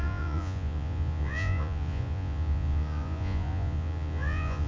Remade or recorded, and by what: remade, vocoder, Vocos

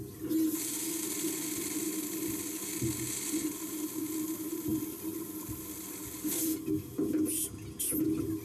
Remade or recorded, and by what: recorded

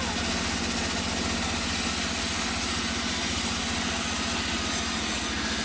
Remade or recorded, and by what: recorded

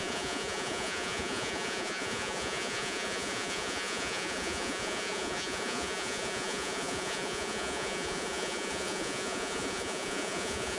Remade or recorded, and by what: remade, vocoder, Vocos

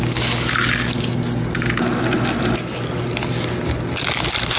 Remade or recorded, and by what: recorded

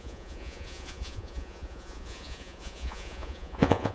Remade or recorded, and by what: remade, vocoder, Vocos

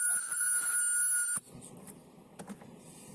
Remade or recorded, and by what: recorded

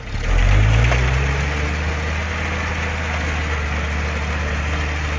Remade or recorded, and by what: recorded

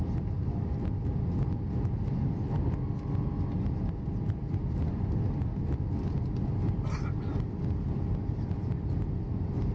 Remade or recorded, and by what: recorded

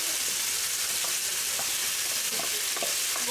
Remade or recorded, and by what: recorded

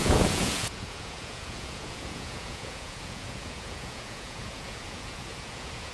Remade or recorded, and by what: remade, vocoder, Vocos